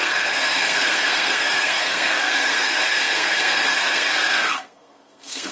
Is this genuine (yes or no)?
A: no